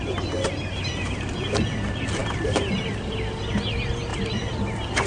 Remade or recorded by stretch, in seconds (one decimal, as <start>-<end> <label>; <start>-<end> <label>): 0.0-2.2 recorded; 2.2-2.8 remade; 2.8-4.1 recorded; 4.1-5.1 remade